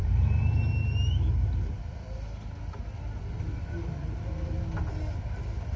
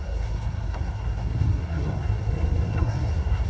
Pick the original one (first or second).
first